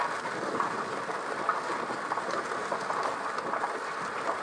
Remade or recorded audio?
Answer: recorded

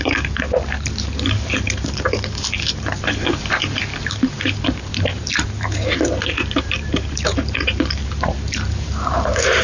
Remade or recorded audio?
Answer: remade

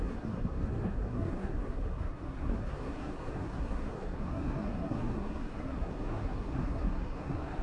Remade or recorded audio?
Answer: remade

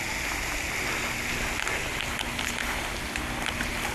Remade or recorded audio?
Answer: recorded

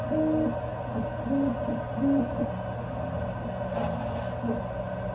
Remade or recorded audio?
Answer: recorded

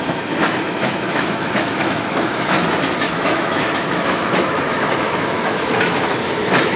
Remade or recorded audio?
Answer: remade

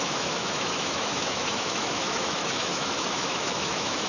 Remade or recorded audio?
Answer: remade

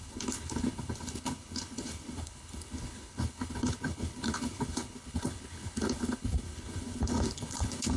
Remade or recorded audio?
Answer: remade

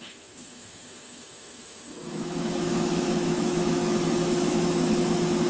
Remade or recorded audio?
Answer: remade